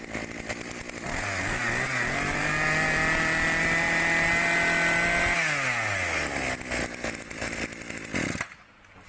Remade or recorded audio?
recorded